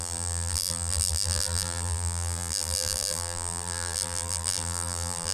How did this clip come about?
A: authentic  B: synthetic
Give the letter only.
B